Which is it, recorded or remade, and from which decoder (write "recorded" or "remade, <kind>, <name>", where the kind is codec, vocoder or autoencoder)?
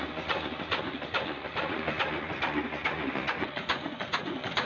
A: remade, vocoder, Vocos